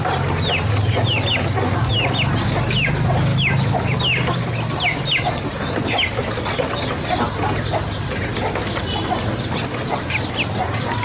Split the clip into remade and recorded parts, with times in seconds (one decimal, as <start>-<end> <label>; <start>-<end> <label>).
0.0-3.3 recorded; 3.3-3.9 remade; 3.9-11.0 recorded